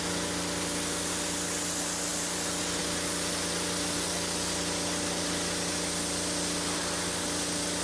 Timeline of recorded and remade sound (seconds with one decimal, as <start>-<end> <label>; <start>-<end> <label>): 0.0-7.8 recorded